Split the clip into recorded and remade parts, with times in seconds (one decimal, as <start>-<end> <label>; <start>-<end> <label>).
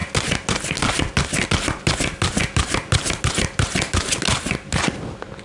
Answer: 0.0-5.4 recorded